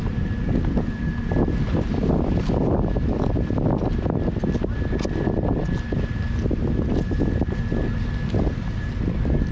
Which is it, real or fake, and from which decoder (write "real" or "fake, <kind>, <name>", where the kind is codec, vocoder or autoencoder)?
real